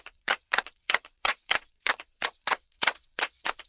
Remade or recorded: remade